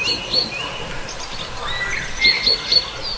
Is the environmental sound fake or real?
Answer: real